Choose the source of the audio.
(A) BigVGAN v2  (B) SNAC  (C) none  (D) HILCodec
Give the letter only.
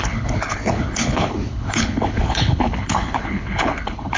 D